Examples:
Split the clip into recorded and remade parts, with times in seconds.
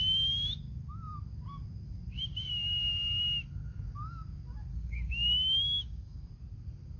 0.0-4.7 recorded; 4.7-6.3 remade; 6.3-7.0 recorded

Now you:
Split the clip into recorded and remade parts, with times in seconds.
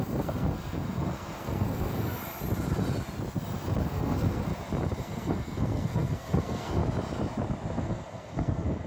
0.0-2.2 remade; 2.2-3.8 recorded; 3.8-4.5 remade; 4.5-5.0 recorded; 5.0-6.8 remade; 6.8-7.8 recorded; 7.8-8.9 remade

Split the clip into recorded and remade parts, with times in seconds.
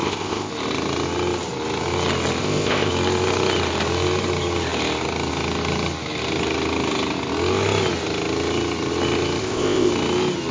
0.0-0.5 remade; 0.5-2.4 recorded; 2.4-2.9 remade; 2.9-9.4 recorded; 9.4-9.9 remade; 9.9-10.5 recorded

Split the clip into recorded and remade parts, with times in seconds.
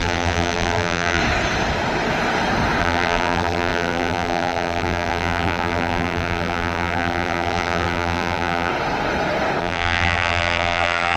0.0-1.2 remade; 1.2-2.8 recorded; 2.8-8.7 remade; 8.7-9.6 recorded; 9.6-11.2 remade